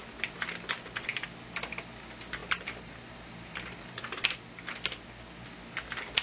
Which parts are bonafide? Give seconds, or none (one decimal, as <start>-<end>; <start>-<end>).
0.0-2.4; 4.0-6.2